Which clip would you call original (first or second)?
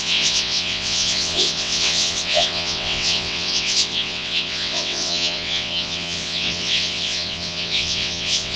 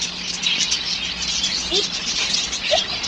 second